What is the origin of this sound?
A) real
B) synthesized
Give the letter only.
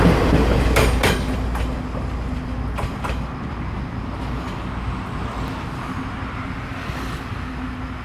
A